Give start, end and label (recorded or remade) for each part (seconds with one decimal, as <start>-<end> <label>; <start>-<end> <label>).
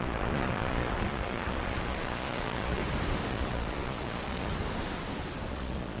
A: 0.0-2.8 remade; 2.8-3.3 recorded; 3.3-4.5 remade; 4.5-5.5 recorded; 5.5-6.0 remade